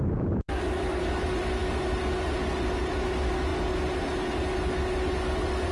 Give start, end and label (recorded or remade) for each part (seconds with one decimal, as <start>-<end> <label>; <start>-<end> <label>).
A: 0.0-5.7 recorded